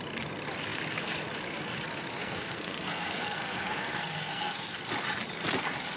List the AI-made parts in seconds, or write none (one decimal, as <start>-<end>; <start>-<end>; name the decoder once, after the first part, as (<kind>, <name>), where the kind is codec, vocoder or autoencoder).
2.2-4.8 (codec, SNAC)